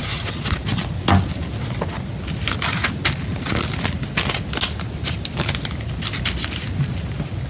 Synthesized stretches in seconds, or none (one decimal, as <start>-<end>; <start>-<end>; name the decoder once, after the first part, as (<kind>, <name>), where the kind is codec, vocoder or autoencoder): none